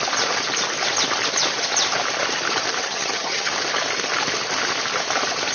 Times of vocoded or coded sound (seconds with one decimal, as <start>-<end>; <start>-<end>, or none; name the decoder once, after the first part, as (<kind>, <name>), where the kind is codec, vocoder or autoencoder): 2.8-3.5 (vocoder, HiFi-GAN)